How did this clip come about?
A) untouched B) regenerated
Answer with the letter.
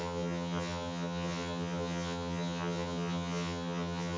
B